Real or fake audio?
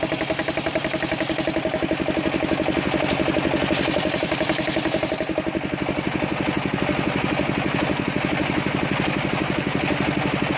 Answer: real